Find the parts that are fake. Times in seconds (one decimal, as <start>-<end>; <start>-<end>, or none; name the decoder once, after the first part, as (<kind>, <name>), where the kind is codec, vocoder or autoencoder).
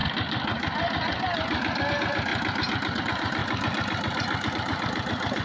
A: 1.9-2.3 (vocoder, BigVGAN v2); 3.0-3.4; 4.5-5.4